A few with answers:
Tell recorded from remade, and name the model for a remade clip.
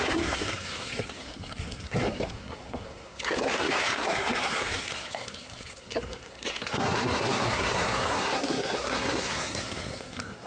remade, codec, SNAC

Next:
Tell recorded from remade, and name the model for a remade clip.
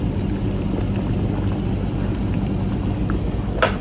recorded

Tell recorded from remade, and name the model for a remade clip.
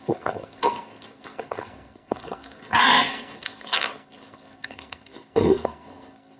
remade, codec, SNAC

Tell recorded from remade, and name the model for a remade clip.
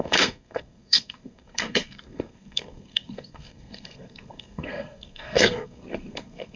remade, codec, SNAC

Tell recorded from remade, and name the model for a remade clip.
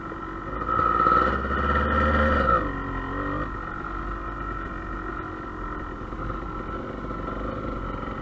recorded